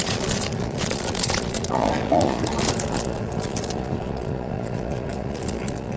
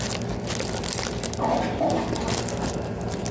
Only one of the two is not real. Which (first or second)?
first